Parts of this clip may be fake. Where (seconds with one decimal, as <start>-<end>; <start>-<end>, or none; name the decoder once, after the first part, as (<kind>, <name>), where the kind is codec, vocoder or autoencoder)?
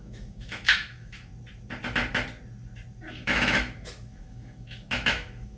0.0-1.3 (autoencoder, DAC-VAE); 3.1-5.6